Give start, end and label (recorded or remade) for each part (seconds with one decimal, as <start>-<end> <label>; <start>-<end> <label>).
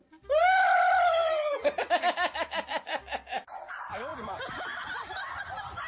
0.0-5.9 recorded